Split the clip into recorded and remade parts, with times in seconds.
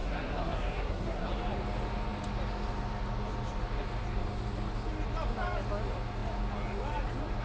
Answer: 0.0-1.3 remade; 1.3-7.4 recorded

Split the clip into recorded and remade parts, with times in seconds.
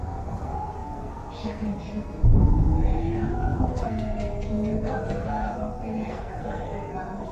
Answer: 0.0-7.3 remade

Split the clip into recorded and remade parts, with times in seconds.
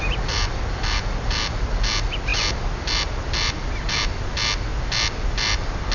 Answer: 0.0-5.9 recorded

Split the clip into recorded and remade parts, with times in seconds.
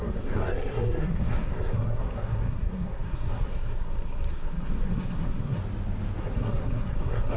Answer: 0.0-5.6 remade; 5.6-6.2 recorded; 6.2-7.4 remade